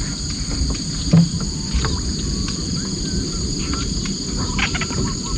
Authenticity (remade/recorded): recorded